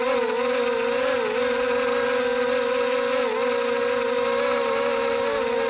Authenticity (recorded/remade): recorded